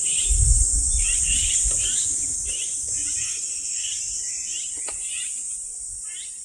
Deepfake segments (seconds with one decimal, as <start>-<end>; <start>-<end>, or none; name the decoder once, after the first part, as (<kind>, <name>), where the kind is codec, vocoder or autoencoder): 3.2-3.9 (codec, SNAC)